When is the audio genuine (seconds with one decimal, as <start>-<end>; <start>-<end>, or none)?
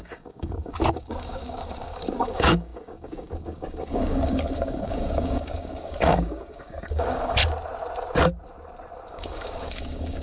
7.4-9.1